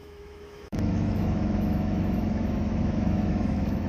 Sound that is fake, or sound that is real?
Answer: fake